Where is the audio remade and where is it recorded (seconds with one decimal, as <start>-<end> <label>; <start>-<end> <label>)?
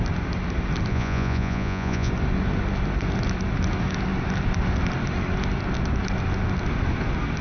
0.0-0.9 recorded; 0.9-2.1 remade; 2.1-7.4 recorded